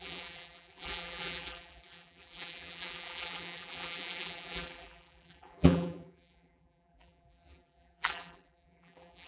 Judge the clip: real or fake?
fake